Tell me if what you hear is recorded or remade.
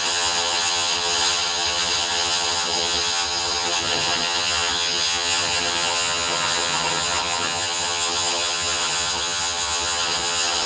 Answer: remade